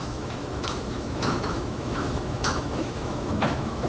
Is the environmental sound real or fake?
fake